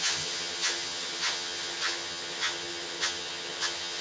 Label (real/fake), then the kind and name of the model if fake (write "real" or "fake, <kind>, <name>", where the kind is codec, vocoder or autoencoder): fake, vocoder, HiFi-GAN